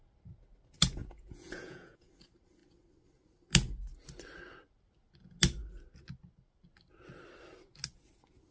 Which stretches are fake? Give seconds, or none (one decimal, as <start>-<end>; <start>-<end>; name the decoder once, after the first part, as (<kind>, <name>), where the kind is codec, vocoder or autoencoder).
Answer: 1.0-2.1 (vocoder, Vocos)